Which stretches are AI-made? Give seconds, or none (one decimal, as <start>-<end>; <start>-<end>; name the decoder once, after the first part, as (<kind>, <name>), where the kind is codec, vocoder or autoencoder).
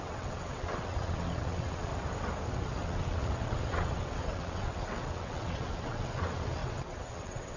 0.0-1.9 (vocoder, WaveNeXt); 2.5-7.6